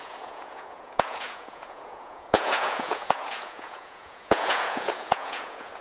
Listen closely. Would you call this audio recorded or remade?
remade